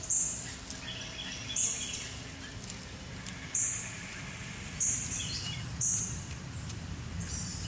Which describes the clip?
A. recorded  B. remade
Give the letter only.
B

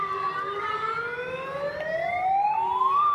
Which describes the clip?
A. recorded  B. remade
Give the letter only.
A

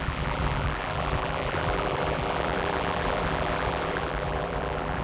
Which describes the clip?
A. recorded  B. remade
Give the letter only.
B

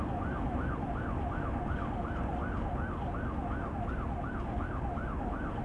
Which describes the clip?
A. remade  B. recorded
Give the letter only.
B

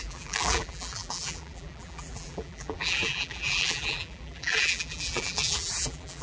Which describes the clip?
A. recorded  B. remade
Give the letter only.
B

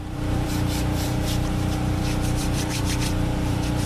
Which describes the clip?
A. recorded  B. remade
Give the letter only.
B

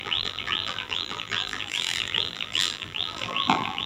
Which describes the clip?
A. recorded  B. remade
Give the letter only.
B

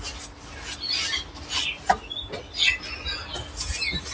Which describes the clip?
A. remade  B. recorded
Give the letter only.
B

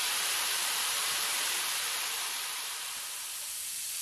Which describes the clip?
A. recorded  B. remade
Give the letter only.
B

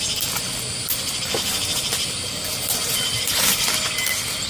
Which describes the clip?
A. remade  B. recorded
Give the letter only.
B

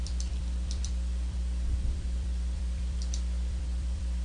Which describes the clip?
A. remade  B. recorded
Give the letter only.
A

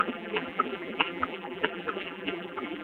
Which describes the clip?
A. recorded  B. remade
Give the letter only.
B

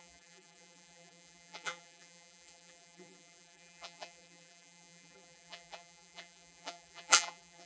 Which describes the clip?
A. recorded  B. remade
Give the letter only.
B